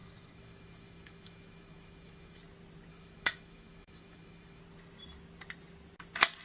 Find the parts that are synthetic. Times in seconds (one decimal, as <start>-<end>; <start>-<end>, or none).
0.0-2.4; 2.9-4.6